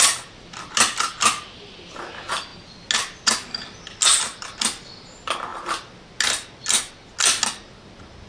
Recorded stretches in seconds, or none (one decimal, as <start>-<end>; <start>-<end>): 0.0-8.3